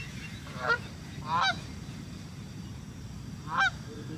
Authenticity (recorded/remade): remade